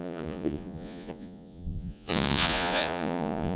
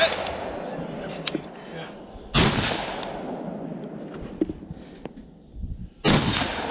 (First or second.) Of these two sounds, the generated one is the first